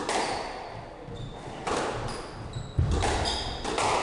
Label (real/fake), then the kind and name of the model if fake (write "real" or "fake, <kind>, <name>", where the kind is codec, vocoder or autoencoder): real